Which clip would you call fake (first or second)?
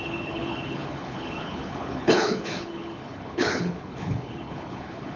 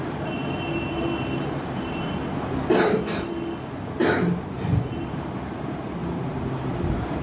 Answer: first